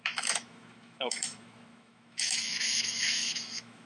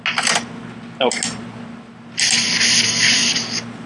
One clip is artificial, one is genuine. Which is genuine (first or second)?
second